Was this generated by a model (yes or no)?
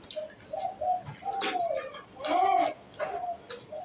no